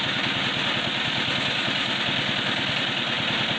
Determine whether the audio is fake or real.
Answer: real